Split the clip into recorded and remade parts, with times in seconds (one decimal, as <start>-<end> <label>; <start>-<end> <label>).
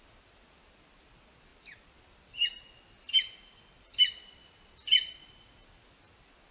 0.0-6.5 recorded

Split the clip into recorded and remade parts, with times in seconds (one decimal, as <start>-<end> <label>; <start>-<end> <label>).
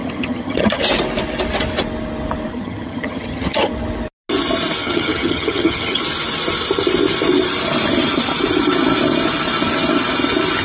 0.0-0.8 remade; 0.8-2.5 recorded; 2.5-3.7 remade; 3.7-4.8 recorded; 4.8-6.0 remade; 6.0-10.6 recorded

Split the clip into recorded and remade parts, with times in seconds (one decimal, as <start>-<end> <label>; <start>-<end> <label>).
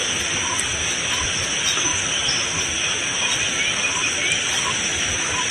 0.0-5.5 recorded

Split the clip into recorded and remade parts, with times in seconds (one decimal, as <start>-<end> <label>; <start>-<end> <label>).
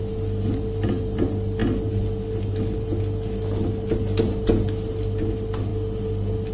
0.0-6.5 recorded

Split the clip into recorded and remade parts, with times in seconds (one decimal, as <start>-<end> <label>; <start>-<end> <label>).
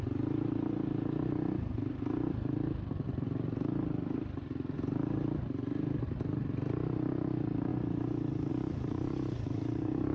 0.0-10.1 recorded